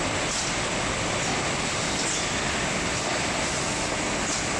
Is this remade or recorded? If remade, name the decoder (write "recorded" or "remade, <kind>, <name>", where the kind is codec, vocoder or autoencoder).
recorded